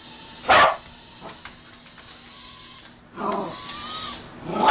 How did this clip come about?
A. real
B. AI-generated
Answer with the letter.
A